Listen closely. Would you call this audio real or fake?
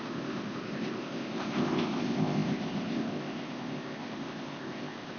fake